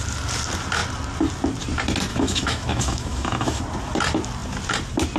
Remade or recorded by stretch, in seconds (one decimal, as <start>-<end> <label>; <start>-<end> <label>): 0.0-2.1 recorded; 2.1-3.6 remade; 3.6-5.2 recorded